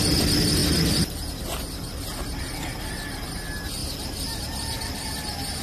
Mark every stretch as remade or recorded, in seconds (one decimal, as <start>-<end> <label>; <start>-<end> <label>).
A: 0.0-5.6 recorded